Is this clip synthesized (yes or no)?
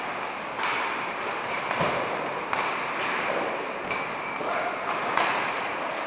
no